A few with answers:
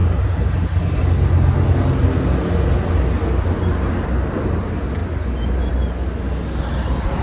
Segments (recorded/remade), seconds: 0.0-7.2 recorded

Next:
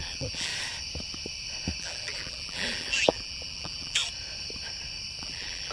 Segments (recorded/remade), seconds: 0.0-0.5 remade; 0.5-1.8 recorded; 1.8-4.0 remade; 4.0-5.2 recorded; 5.2-5.7 remade

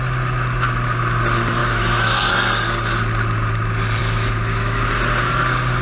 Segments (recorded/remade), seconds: 0.0-1.6 recorded; 1.6-2.3 remade; 2.3-4.0 recorded; 4.0-4.9 remade; 4.9-5.8 recorded

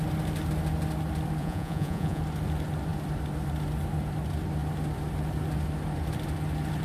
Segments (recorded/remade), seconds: 0.0-1.4 recorded; 1.4-2.2 remade; 2.2-6.8 recorded

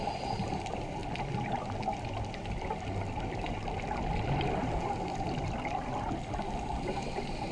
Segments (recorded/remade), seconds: 0.0-7.5 recorded

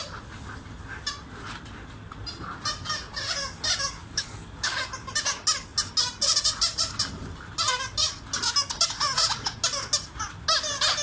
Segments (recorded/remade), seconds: 0.0-4.0 recorded; 4.0-4.8 remade; 4.8-11.0 recorded